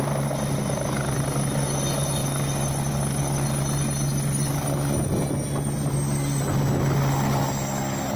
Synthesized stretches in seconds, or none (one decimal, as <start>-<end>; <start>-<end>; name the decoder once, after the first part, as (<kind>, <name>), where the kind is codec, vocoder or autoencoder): none